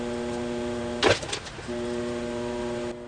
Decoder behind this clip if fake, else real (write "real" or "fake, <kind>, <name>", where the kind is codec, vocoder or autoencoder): real